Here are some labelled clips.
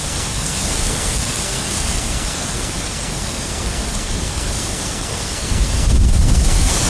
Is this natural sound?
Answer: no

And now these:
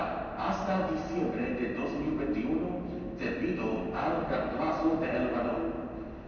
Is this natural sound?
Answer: yes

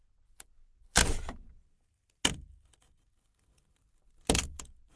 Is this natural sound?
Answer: yes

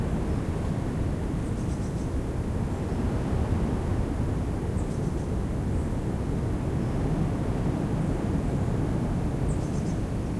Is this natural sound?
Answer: yes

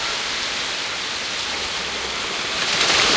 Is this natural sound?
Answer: yes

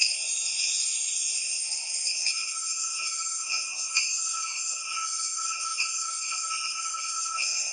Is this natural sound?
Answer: no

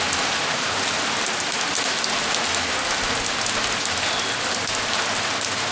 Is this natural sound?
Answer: yes